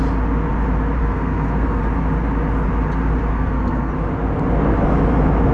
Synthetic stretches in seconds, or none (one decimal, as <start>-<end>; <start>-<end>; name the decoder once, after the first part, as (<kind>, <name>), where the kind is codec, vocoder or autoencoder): 1.0-1.8 (codec, SNAC); 3.3-3.9